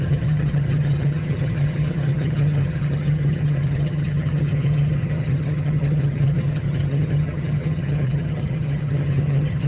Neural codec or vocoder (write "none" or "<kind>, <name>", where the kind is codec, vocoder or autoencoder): vocoder, HiFi-GAN